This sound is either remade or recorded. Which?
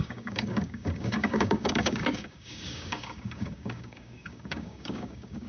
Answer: remade